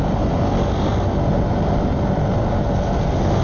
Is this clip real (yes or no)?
yes